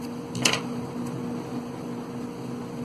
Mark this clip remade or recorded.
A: recorded